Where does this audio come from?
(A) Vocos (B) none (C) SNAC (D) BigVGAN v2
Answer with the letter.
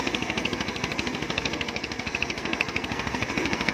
C